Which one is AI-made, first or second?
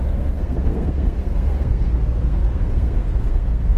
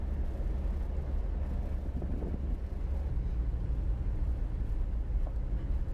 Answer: first